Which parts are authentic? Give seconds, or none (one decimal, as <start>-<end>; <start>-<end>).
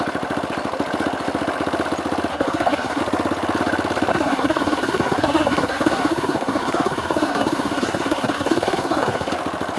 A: 0.0-2.3; 3.0-4.1; 9.3-9.8